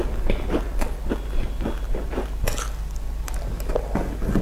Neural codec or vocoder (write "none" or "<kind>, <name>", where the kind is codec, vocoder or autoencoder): none